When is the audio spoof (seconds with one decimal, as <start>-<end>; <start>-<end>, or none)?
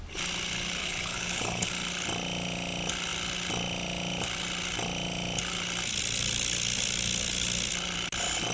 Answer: 0.8-1.7